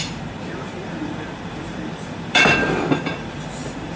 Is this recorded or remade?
remade